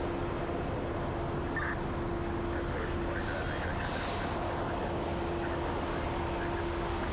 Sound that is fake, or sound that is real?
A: real